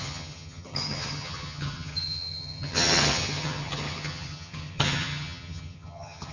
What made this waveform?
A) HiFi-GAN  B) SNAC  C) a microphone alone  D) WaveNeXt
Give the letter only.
A